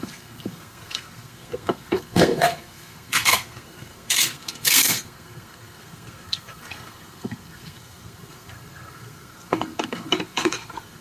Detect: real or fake fake